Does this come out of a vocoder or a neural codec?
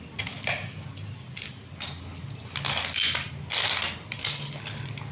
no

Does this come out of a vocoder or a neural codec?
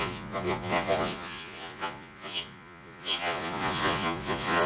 yes